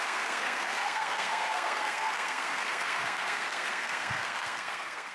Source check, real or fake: fake